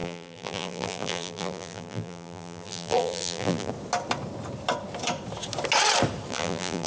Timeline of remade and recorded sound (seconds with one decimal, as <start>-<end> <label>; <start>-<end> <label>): 0.0-3.7 remade; 3.7-6.3 recorded; 6.3-6.9 remade

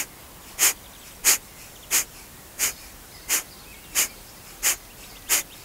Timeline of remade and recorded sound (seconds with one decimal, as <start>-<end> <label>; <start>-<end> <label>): 0.0-2.3 recorded; 2.3-3.2 remade; 3.2-3.7 recorded; 3.7-4.8 remade; 4.8-5.6 recorded

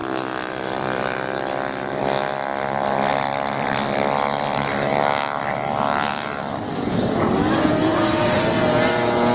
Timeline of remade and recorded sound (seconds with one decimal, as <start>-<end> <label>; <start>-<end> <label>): 0.0-2.0 remade; 2.0-3.1 recorded; 3.1-7.3 remade; 7.3-9.3 recorded

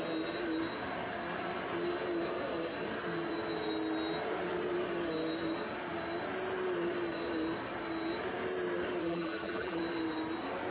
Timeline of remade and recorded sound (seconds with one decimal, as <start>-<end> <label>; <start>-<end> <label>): 0.0-9.0 recorded; 9.0-9.8 remade; 9.8-10.7 recorded

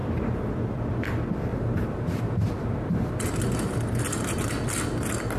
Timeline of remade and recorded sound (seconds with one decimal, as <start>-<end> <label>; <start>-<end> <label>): 0.0-1.5 recorded; 1.5-4.5 remade; 4.5-5.4 recorded